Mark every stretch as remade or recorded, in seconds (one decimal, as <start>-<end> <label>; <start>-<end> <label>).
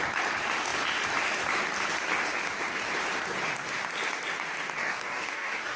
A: 0.0-4.8 recorded; 4.8-5.8 remade